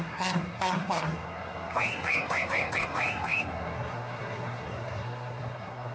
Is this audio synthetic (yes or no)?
yes